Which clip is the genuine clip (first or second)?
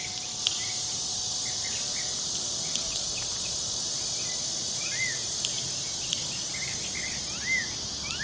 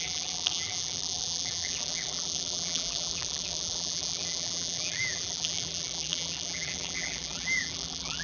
first